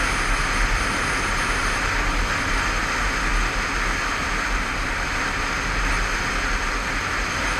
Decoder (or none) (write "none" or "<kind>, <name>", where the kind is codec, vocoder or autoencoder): none